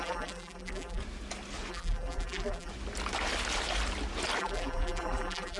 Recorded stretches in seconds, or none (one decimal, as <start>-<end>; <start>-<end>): 1.0-1.7; 2.7-4.4